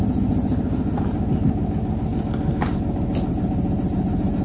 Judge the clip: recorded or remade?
recorded